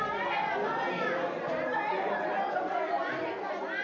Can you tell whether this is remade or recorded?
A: recorded